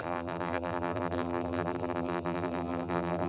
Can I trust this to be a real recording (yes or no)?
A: no